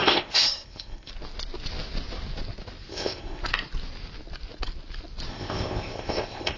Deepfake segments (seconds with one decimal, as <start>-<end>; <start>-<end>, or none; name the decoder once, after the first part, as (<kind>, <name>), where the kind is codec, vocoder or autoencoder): 0.0-1.1 (codec, ZipCodec); 2.9-3.4; 5.3-6.6